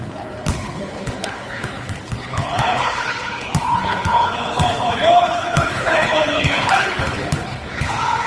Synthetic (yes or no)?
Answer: yes